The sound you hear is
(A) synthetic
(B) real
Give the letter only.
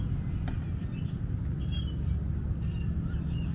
B